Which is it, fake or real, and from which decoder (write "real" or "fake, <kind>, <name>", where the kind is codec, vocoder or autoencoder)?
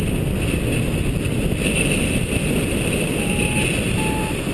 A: real